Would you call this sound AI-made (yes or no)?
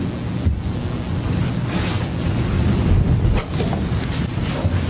no